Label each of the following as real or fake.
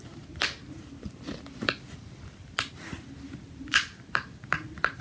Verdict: real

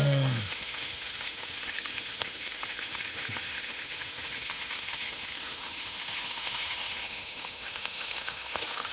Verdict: fake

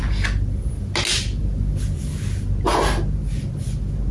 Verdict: real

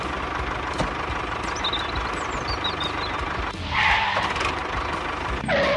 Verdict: real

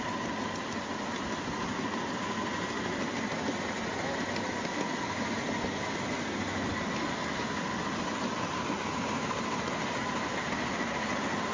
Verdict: real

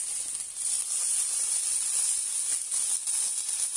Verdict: real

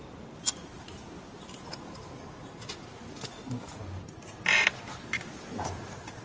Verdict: real